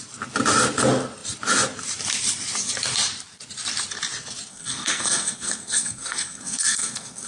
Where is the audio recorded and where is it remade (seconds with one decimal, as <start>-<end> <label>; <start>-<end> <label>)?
0.0-4.5 recorded; 4.5-7.3 remade